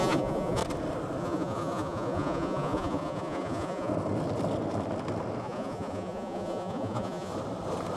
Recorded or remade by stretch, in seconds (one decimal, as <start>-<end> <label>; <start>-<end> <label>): 0.0-0.6 remade; 0.6-1.2 recorded; 1.2-3.9 remade; 3.9-5.4 recorded; 5.4-7.3 remade; 7.3-8.0 recorded